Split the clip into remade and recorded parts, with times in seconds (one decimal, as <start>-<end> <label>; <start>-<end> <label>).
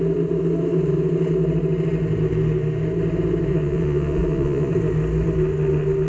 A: 0.0-3.5 recorded; 3.5-4.7 remade; 4.7-6.1 recorded